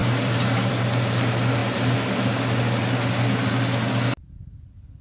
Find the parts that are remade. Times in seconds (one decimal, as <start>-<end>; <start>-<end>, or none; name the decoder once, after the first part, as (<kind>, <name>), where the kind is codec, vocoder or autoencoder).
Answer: 0.0-0.7 (vocoder, BigVGAN v2)